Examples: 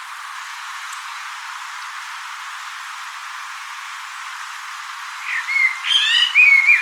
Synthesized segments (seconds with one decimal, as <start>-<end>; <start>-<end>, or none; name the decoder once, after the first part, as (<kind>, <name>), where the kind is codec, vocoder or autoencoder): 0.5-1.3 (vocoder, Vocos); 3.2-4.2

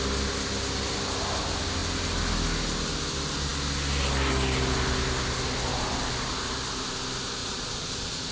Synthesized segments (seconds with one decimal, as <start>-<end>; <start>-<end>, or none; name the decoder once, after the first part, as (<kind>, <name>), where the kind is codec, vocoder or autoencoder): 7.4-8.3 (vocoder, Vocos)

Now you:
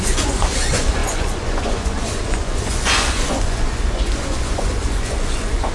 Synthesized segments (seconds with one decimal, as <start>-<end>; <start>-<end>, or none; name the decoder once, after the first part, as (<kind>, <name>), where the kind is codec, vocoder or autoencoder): 0.0-5.7 (vocoder, Vocos)

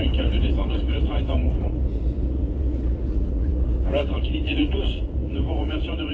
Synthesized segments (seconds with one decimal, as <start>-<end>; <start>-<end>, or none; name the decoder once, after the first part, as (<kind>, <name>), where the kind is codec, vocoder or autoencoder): 0.0-6.1 (vocoder, Vocos)

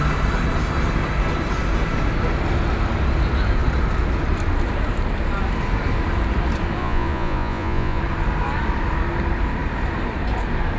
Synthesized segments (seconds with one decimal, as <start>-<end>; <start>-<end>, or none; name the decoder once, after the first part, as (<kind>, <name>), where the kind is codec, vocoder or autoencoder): 6.8-8.0 (vocoder, Vocos)

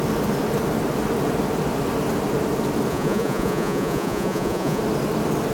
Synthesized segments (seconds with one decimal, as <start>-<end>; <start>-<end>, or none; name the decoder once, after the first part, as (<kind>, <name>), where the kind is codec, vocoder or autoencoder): 2.9-4.8 (vocoder, Vocos)

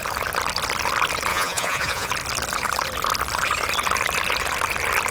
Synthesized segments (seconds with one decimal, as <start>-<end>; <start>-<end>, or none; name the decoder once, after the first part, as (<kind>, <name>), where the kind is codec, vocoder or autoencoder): 1.3-2.1 (vocoder, Vocos)